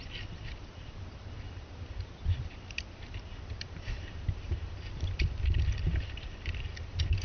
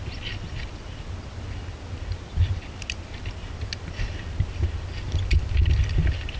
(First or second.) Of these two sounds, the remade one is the first